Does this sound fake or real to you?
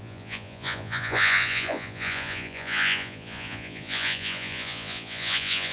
fake